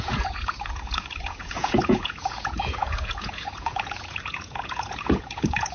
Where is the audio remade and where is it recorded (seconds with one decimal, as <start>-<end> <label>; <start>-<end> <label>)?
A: 0.0-5.7 remade